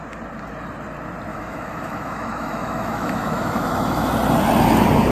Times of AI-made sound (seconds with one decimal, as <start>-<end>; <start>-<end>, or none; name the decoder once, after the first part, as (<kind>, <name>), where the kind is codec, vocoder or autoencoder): 1.3-4.1 (autoencoder, DAC-VAE)